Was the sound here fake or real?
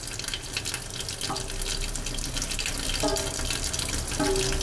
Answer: real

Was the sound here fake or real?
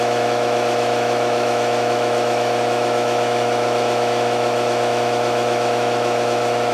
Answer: fake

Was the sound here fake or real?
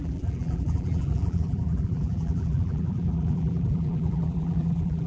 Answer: fake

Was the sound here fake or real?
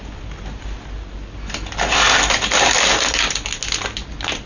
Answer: real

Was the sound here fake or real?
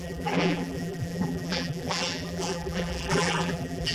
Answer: fake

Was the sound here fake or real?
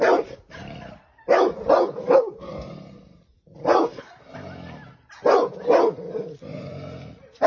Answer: real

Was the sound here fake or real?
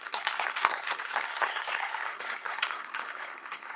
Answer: fake